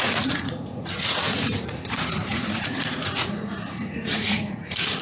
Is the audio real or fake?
fake